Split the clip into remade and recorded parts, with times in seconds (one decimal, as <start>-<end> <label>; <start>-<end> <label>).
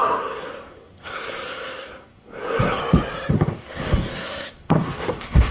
0.0-2.8 remade; 2.8-3.3 recorded; 3.3-5.5 remade